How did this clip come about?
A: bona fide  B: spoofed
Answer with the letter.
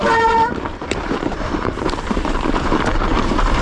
B